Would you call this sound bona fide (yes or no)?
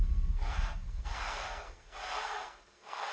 no